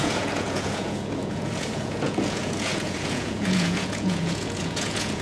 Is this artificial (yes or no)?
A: yes